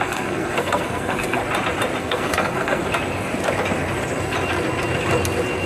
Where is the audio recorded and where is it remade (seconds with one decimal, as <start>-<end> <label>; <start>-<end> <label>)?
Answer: 0.0-1.4 remade; 1.4-2.0 recorded; 2.0-2.8 remade; 2.8-5.7 recorded

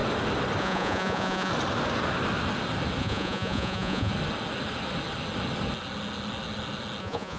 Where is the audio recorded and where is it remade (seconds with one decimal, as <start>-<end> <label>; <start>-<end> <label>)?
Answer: 0.0-0.6 recorded; 0.6-1.5 remade; 1.5-3.0 recorded; 3.0-4.1 remade; 4.1-7.0 recorded; 7.0-7.4 remade

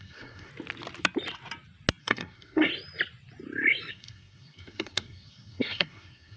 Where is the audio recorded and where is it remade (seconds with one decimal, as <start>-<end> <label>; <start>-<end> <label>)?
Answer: 0.0-0.5 remade; 0.5-2.0 recorded; 2.0-2.7 remade; 2.7-3.9 recorded; 3.9-6.4 remade

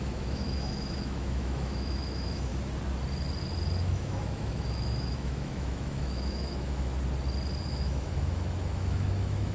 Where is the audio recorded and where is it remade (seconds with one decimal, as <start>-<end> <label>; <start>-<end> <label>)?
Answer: 0.0-2.5 remade; 2.5-3.8 recorded; 3.8-6.9 remade; 6.9-7.6 recorded; 7.6-9.5 remade

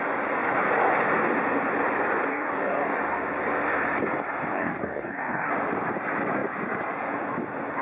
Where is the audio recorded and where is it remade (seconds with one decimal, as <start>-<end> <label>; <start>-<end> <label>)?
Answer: 0.0-2.3 recorded; 2.3-3.0 remade; 3.0-4.5 recorded; 4.5-5.5 remade; 5.5-7.8 recorded

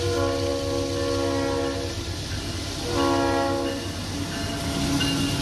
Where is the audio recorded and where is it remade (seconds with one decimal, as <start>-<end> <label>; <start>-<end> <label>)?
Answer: 0.0-5.4 recorded